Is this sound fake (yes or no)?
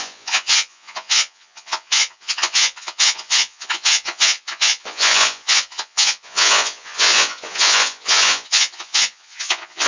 yes